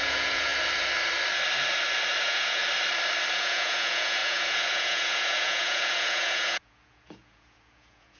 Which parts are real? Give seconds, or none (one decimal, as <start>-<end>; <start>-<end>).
0.5-2.2; 2.6-3.3